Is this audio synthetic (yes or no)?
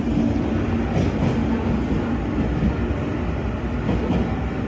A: no